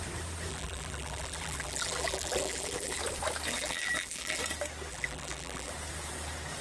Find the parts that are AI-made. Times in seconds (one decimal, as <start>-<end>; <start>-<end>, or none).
0.5-3.0; 3.5-4.4; 4.9-5.7